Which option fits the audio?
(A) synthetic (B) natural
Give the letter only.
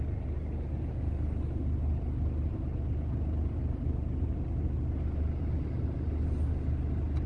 B